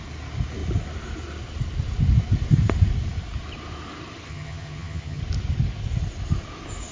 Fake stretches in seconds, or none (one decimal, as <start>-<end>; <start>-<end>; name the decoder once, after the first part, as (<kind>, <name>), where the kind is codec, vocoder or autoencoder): 4.3-5.2 (vocoder, HiFi-GAN)